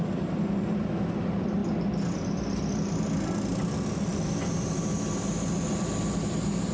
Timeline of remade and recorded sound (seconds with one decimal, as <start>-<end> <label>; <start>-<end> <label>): 0.0-6.7 recorded